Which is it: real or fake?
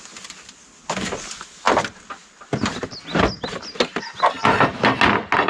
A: real